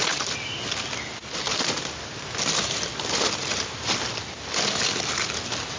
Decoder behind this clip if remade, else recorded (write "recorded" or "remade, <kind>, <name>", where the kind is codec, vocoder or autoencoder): recorded